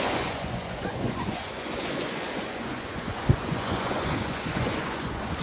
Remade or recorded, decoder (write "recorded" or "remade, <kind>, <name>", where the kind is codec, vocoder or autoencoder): remade, vocoder, Vocos